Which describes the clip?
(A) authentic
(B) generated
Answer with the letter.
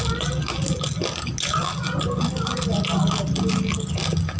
A